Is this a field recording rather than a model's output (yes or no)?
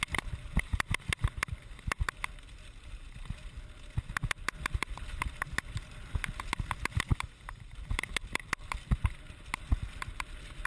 yes